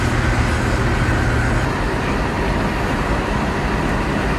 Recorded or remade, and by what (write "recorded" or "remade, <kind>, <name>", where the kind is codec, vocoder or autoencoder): recorded